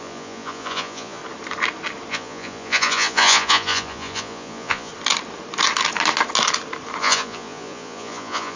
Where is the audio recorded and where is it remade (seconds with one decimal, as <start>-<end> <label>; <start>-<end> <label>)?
0.0-1.2 remade; 1.2-2.1 recorded; 2.1-4.9 remade; 4.9-7.0 recorded; 7.0-8.6 remade